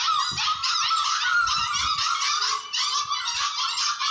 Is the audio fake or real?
real